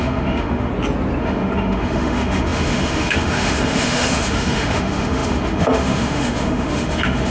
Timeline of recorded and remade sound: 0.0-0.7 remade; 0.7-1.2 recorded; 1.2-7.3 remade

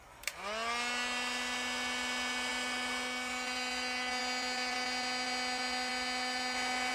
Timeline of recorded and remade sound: 0.0-6.9 recorded

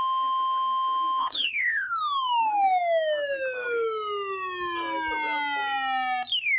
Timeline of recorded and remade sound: 0.0-1.2 recorded; 1.2-1.9 remade; 1.9-6.6 recorded

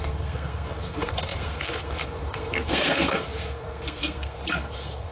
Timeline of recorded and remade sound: 0.0-5.1 remade

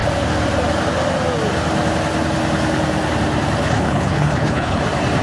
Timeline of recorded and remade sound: 0.0-3.6 recorded; 3.6-4.8 remade; 4.8-5.2 recorded